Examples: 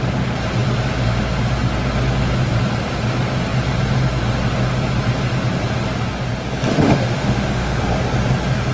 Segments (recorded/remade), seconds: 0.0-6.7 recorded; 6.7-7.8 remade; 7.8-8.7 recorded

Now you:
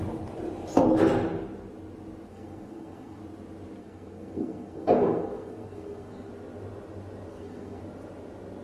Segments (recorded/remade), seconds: 0.0-2.3 recorded; 2.3-3.2 remade; 3.2-3.8 recorded; 3.8-6.3 remade; 6.3-7.3 recorded; 7.3-7.8 remade; 7.8-8.6 recorded

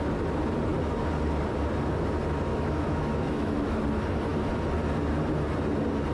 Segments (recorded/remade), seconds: 0.0-2.5 recorded; 2.5-3.8 remade; 3.8-6.1 recorded

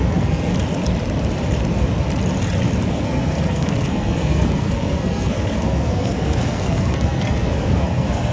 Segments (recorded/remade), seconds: 0.0-0.5 remade; 0.5-2.9 recorded; 2.9-8.3 remade

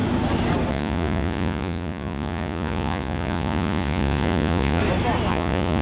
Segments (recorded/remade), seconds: 0.0-0.7 recorded; 0.7-4.8 remade; 4.8-5.3 recorded; 5.3-5.8 remade